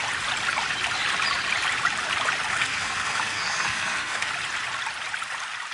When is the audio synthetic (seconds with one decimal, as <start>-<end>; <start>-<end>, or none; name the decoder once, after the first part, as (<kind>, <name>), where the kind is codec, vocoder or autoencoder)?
2.6-4.3 (codec, SNAC)